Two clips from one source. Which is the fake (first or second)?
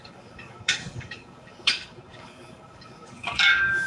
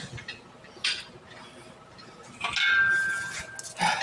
first